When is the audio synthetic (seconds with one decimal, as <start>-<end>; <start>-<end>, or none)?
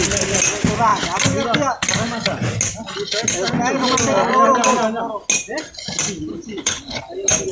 6.3-7.0